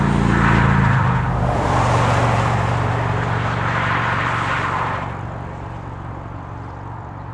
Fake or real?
real